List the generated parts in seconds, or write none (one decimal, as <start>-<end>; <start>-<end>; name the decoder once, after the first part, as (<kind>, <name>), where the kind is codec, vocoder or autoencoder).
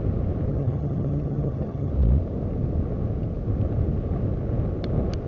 0.5-1.9 (vocoder, HiFi-GAN)